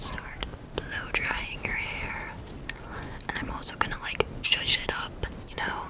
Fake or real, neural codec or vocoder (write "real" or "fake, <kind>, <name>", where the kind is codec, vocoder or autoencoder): real